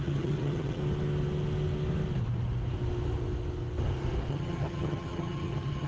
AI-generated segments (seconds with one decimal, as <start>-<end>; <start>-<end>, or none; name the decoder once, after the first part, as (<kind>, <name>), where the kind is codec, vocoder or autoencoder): 0.0-0.8 (vocoder, HiFi-GAN); 4.3-5.9